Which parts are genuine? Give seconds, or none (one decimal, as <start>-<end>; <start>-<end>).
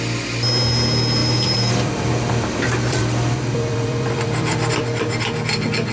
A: 0.0-1.2; 4.7-5.9